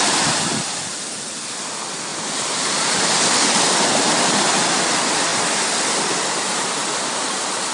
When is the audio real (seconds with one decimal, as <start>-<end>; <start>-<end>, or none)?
0.0-2.1; 4.8-5.3; 6.2-7.7